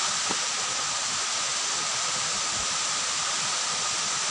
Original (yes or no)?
yes